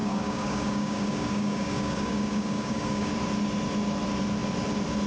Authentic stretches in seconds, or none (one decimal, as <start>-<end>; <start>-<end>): 3.1-5.1